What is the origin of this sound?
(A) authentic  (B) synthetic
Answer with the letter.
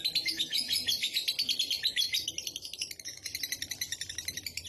A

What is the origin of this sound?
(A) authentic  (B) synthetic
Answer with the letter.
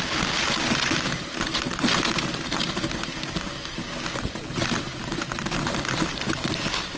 A